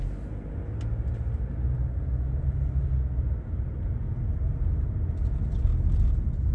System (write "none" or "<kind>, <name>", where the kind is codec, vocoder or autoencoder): none